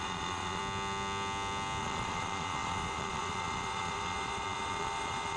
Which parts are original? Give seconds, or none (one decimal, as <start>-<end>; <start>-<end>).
0.6-1.8